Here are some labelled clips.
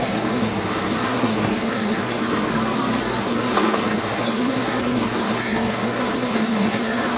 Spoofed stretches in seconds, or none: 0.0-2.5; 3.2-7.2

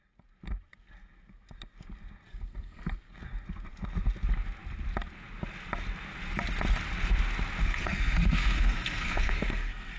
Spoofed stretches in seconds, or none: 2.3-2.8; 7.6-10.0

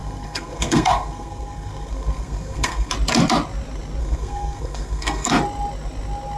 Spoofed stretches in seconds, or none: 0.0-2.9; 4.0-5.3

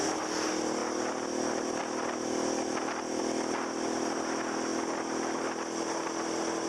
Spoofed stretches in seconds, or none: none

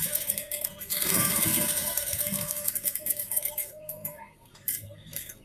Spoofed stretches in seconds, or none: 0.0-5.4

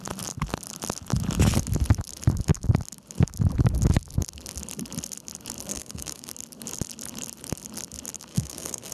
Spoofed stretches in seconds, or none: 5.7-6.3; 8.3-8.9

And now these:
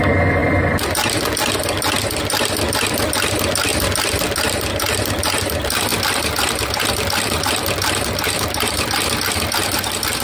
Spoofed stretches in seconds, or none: none

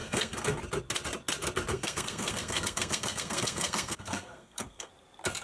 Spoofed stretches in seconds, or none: 0.0-0.6; 1.7-4.9